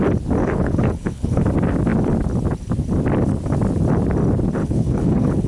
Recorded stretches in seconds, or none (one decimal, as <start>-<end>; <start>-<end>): 0.0-0.4; 1.4-4.6